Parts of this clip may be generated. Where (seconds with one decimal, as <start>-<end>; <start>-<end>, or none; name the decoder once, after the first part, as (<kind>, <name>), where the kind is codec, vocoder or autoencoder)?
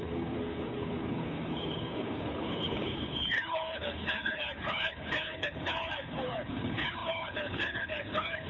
0.0-8.5 (codec, HILCodec)